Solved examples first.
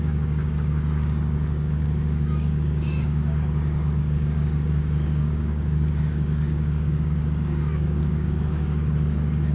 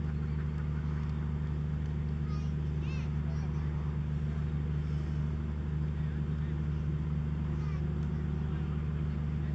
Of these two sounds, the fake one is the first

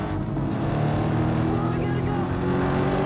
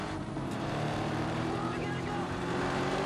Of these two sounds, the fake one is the second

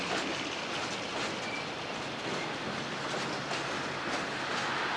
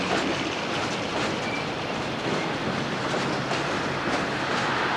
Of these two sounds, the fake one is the second